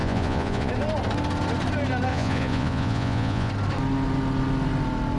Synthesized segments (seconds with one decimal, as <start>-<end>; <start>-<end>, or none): 0.0-0.7; 2.1-3.5